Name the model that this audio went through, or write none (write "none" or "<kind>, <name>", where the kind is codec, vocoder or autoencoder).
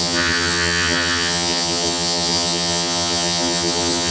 vocoder, HiFi-GAN